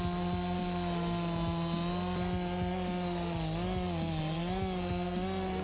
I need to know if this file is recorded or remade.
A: recorded